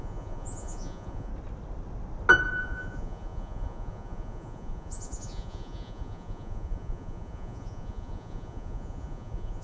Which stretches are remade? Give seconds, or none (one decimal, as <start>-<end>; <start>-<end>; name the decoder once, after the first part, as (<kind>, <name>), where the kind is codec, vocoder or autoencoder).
0.0-1.3 (vocoder, Vocos); 2.6-9.6